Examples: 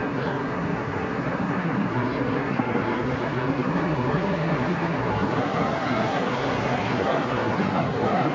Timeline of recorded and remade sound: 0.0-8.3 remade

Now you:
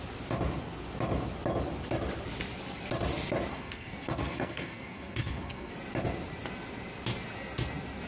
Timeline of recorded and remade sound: 0.0-3.5 recorded; 3.5-5.7 remade; 5.7-8.1 recorded

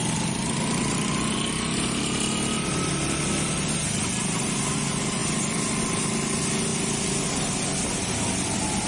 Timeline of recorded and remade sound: 0.0-5.2 recorded; 5.2-5.8 remade; 5.8-8.9 recorded

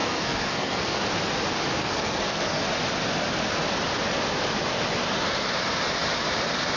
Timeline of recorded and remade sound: 0.0-1.0 remade; 1.0-1.8 recorded; 1.8-2.6 remade; 2.6-6.8 recorded

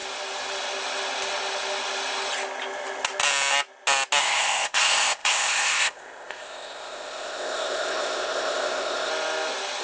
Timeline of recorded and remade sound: 0.0-4.2 recorded; 4.2-9.1 remade; 9.1-9.8 recorded

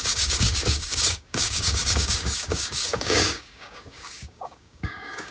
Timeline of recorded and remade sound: 0.0-5.3 remade

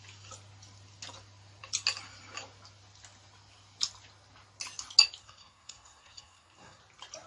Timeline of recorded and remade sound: 0.0-5.2 recorded; 5.2-6.8 remade; 6.8-7.3 recorded